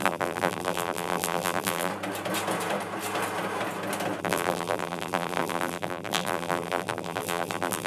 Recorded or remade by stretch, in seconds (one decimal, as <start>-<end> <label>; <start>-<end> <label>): 0.0-1.9 remade; 1.9-4.2 recorded; 4.2-7.9 remade

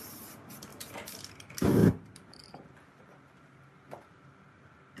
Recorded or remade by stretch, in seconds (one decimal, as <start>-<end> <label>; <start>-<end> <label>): 0.0-0.7 recorded; 0.7-1.3 remade; 1.3-5.0 recorded

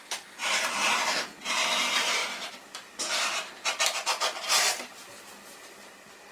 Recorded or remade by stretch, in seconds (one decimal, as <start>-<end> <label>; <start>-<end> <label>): 0.0-0.4 remade; 0.4-1.7 recorded; 1.7-2.2 remade; 2.2-6.3 recorded